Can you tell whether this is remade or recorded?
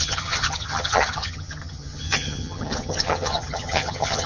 remade